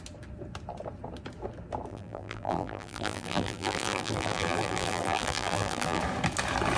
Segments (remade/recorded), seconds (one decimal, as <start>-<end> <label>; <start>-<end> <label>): 0.0-1.9 recorded; 1.9-6.0 remade; 6.0-6.8 recorded